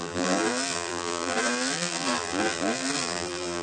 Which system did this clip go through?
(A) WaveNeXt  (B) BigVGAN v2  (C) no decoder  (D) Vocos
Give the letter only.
B